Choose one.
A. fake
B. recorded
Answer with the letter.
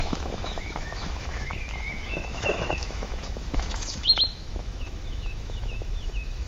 A